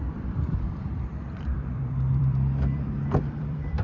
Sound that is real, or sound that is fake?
fake